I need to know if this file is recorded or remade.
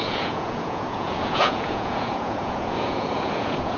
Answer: remade